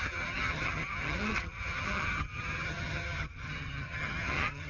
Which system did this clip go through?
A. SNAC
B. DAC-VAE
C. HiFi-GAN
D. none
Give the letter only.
C